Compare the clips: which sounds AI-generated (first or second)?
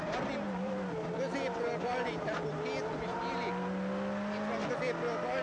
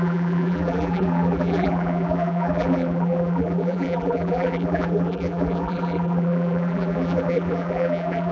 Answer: second